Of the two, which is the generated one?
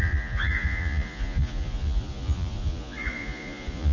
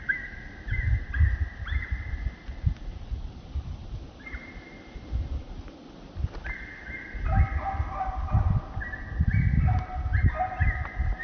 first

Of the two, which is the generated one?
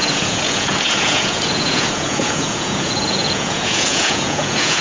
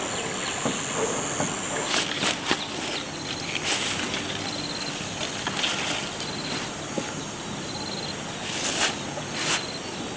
first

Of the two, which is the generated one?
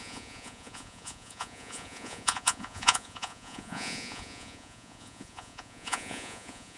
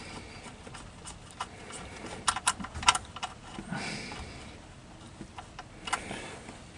first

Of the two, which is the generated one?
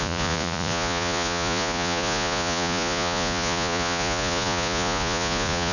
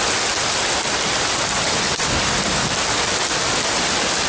first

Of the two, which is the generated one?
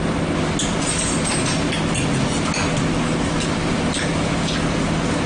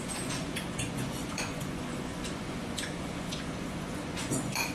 second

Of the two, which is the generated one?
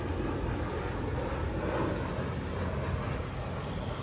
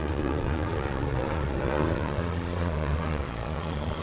second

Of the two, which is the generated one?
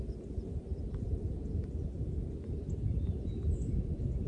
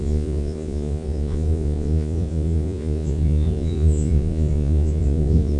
second